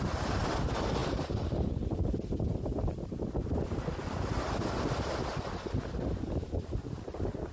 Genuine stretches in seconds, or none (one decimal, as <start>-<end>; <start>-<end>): 0.0-7.5